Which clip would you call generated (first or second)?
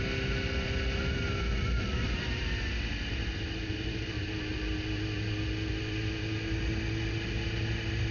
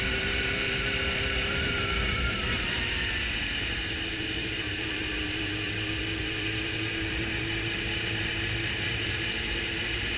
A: second